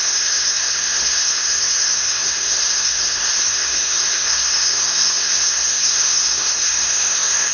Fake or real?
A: fake